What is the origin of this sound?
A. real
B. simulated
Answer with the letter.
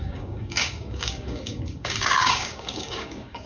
B